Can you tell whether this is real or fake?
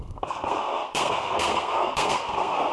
fake